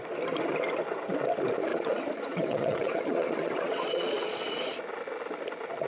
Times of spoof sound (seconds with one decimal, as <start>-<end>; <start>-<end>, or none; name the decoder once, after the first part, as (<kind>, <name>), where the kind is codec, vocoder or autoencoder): 1.7-4.4 (vocoder, Vocos)